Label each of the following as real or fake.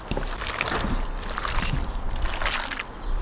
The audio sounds real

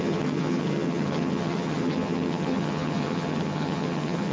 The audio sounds fake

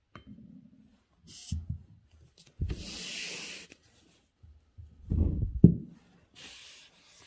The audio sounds real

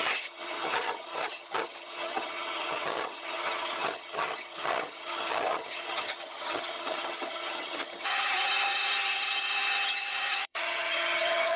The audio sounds fake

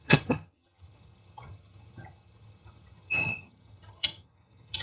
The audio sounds fake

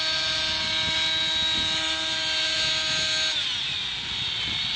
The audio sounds real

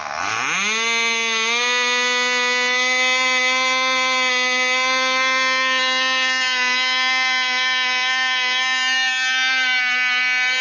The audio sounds real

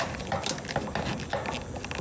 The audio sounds real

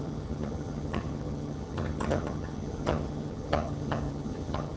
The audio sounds fake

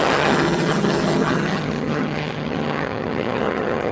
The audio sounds fake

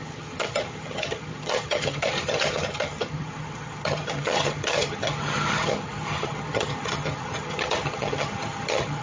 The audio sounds fake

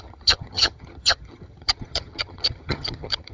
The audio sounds fake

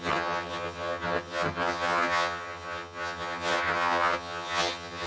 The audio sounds fake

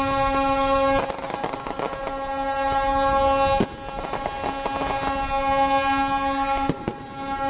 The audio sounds real